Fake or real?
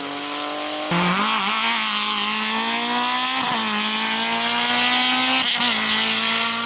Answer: real